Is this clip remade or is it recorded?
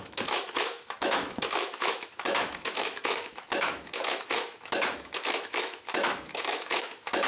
remade